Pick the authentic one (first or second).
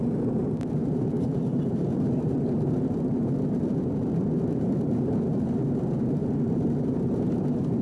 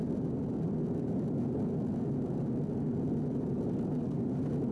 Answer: second